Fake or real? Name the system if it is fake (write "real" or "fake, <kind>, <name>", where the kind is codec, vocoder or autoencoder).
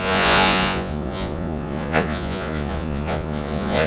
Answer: fake, vocoder, Vocos